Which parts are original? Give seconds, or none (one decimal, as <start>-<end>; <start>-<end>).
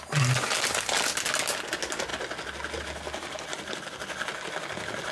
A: 0.0-5.1